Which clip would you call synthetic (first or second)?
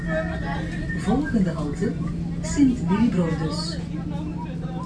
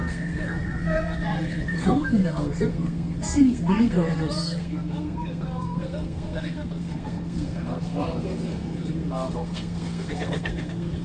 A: second